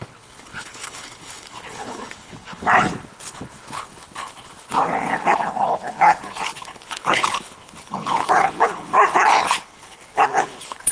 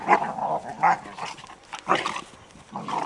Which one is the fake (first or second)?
first